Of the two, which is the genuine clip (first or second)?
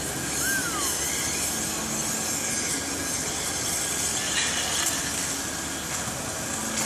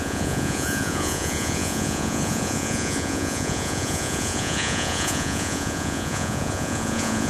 first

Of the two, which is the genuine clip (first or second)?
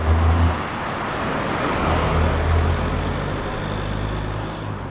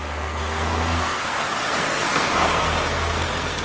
first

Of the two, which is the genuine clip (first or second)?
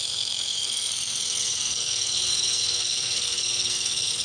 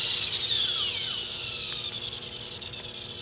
second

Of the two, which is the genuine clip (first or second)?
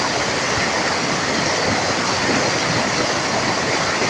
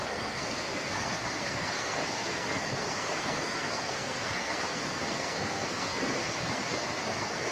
first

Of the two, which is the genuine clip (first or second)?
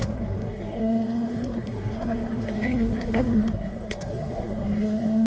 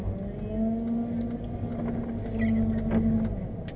second